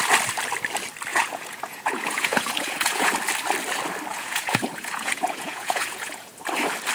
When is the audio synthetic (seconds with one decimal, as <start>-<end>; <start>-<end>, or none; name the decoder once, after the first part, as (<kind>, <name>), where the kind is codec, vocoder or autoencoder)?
1.1-3.1 (vocoder, Vocos); 4.1-6.3